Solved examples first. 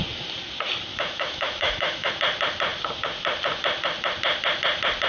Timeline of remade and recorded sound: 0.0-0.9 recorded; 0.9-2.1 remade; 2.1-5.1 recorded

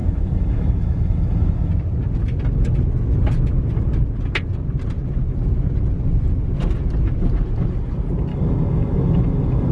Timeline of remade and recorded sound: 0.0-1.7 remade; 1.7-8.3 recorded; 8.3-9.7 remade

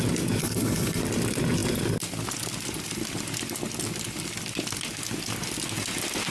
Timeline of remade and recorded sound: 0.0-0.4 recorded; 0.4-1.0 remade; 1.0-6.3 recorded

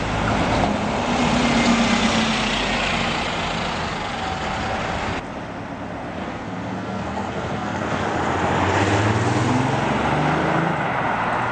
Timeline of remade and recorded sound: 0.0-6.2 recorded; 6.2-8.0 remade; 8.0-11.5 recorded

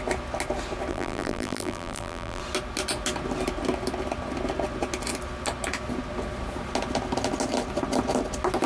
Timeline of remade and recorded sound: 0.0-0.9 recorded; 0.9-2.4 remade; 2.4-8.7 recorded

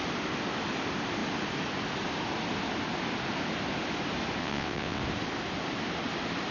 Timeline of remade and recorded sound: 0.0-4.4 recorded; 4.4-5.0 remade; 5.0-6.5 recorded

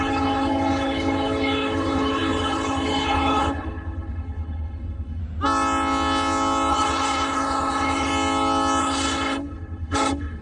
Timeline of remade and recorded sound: 0.0-5.2 remade; 5.2-6.7 recorded; 6.7-8.1 remade; 8.1-8.8 recorded; 8.8-10.4 remade

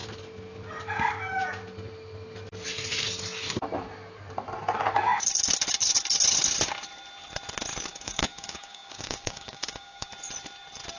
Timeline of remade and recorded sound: 0.0-7.9 recorded; 7.9-10.1 remade; 10.1-11.0 recorded